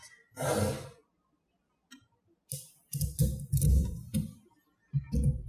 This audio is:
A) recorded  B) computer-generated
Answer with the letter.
A